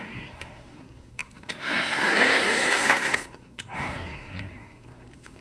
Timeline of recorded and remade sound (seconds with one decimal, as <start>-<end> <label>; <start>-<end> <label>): 0.0-5.4 remade